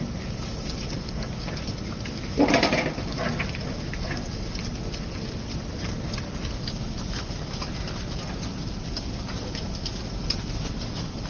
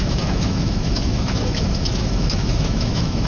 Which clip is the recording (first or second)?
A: first